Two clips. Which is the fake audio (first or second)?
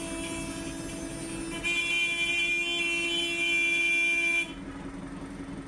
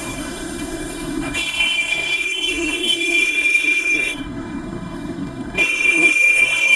second